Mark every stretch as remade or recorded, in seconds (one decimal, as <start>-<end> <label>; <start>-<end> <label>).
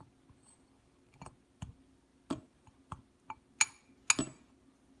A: 0.0-5.0 recorded